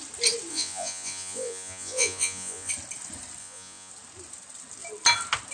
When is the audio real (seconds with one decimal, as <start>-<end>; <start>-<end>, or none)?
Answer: 0.0-0.5; 2.7-3.4; 3.9-5.5